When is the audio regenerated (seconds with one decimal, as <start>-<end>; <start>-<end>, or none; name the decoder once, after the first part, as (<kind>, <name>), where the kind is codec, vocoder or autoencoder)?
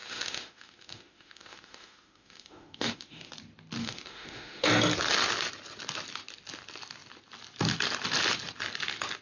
0.0-3.3 (autoencoder, DAC-VAE); 3.8-4.7